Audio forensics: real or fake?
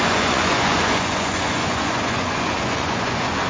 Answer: fake